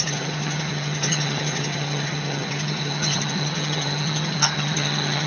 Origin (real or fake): fake